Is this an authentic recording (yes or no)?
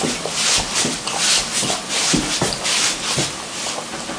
yes